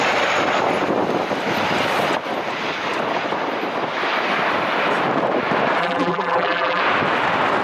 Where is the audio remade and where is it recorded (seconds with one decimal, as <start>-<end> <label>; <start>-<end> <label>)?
0.0-5.8 recorded; 5.8-6.8 remade; 6.8-7.6 recorded